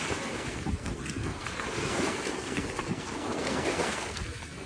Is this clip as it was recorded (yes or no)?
no